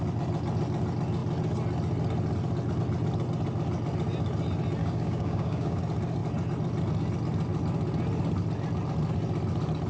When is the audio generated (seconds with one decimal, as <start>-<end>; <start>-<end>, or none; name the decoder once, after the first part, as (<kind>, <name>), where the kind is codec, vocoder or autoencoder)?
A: 4.8-5.8 (codec, DAC)